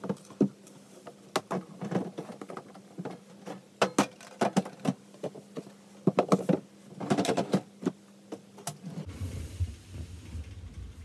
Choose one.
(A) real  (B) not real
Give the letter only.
A